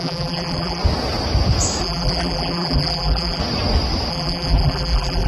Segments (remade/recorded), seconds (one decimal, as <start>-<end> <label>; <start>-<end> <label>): 0.0-0.8 remade; 0.8-1.8 recorded; 1.8-3.4 remade; 3.4-4.1 recorded; 4.1-5.3 remade